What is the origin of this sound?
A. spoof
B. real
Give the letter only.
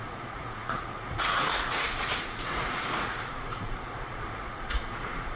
A